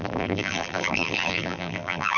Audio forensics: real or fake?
fake